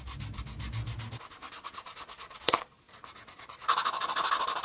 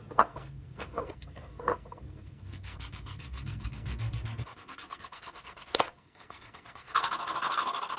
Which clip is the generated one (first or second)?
second